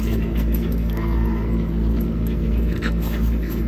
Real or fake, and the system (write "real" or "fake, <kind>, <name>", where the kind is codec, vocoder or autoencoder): fake, codec, SNAC